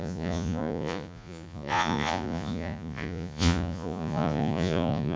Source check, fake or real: fake